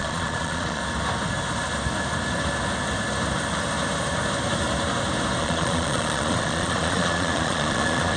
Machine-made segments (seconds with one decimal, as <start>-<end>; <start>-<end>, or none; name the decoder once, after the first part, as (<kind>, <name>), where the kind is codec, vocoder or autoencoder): 0.0-0.8 (vocoder, Vocos); 5.4-8.2